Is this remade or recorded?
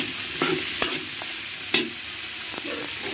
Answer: recorded